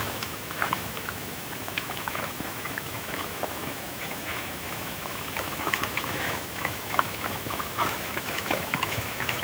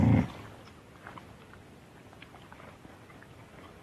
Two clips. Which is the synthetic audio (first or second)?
first